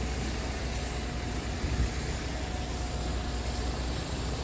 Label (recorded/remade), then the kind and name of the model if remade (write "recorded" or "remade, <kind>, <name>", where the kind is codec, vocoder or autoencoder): recorded